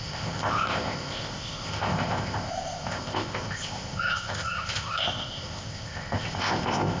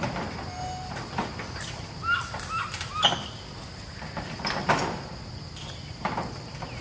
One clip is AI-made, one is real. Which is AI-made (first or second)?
first